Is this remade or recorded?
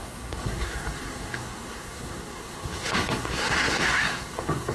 remade